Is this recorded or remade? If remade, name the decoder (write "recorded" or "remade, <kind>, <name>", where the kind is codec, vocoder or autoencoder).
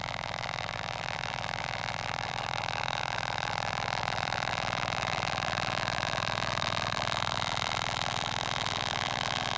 remade, vocoder, BigVGAN v2